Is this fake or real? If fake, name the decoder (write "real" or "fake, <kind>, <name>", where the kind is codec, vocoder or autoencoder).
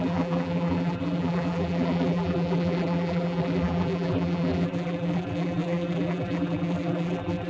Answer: fake, vocoder, BigVGAN v2